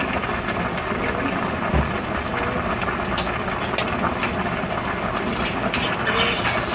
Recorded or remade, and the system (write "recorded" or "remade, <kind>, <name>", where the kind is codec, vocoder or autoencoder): recorded